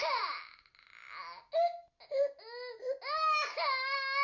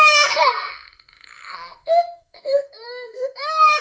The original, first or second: first